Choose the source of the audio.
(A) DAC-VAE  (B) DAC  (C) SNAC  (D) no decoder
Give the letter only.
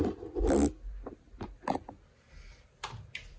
D